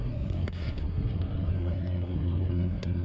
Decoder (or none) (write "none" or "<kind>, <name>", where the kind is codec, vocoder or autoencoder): codec, SNAC